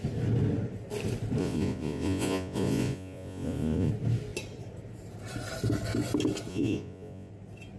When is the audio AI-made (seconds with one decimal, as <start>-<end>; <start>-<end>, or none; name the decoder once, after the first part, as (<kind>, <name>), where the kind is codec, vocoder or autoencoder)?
1.4-3.9 (vocoder, Vocos); 6.5-7.3